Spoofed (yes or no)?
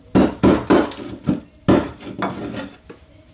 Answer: no